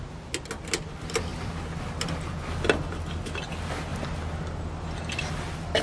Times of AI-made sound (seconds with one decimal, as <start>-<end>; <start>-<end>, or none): none